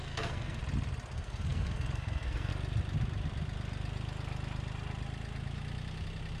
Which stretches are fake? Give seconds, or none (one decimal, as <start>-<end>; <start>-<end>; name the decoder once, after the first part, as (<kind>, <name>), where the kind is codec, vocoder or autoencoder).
0.0-0.6 (codec, SNAC); 1.1-2.5

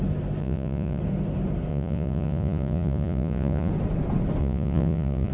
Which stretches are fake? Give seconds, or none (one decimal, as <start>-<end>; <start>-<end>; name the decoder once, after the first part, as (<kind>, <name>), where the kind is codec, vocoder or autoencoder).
0.4-1.0 (vocoder, Vocos); 1.7-3.7; 4.4-5.3

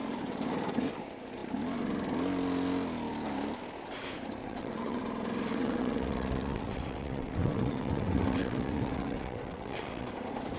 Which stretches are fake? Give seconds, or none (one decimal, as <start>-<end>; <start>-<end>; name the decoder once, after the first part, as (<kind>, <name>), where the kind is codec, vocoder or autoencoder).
4.4-5.0 (vocoder, WaveNeXt); 5.5-10.1

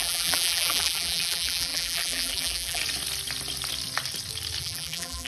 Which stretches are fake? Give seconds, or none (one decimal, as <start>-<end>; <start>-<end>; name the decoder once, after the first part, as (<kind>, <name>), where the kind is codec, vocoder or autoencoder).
0.0-2.8 (vocoder, BigVGAN v2); 4.6-5.3

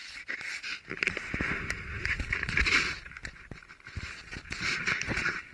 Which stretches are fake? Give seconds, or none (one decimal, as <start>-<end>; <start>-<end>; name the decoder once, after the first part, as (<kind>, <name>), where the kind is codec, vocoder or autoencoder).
0.0-3.3 (vocoder, BigVGAN v2)

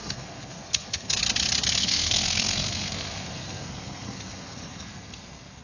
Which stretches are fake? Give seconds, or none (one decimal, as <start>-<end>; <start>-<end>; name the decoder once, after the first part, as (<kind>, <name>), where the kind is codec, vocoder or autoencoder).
0.0-1.2 (codec, SNAC); 1.8-5.6

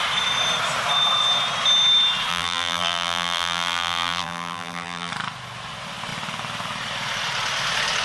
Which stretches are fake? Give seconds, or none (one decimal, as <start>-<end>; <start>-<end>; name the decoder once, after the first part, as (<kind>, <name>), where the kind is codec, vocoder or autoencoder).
2.3-5.1 (vocoder, BigVGAN v2)

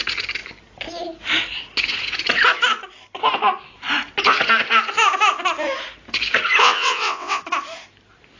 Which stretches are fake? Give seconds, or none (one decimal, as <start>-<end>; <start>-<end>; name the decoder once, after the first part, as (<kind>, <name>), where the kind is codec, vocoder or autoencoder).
6.6-7.4 (vocoder, WaveNeXt)